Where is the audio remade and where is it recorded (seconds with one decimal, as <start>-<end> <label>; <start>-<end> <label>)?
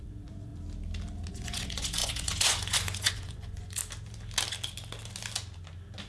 0.0-0.5 remade; 0.5-1.3 recorded; 1.3-3.8 remade; 3.8-6.1 recorded